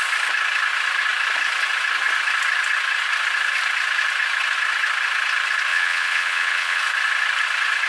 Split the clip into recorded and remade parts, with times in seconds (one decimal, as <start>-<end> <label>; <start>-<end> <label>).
0.0-5.7 recorded; 5.7-6.8 remade; 6.8-7.9 recorded